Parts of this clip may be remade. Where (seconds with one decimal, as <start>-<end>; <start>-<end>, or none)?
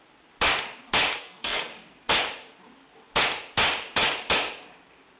1.2-1.7